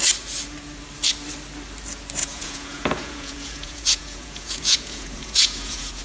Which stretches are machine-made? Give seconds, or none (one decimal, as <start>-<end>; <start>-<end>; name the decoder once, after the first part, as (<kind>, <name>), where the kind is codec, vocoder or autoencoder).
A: 2.2-6.0 (vocoder, Vocos)